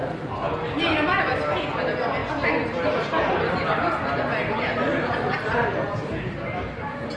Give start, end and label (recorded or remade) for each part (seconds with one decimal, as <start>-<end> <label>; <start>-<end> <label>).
0.0-7.2 recorded